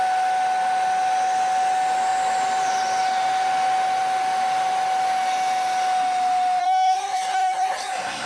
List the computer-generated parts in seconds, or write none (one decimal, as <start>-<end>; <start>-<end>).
6.6-8.3